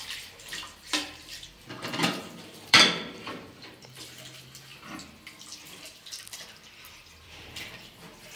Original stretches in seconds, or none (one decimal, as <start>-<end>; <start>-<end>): 4.7-7.0